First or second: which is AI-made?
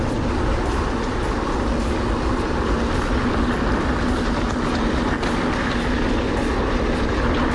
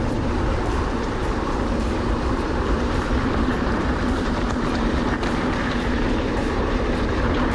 second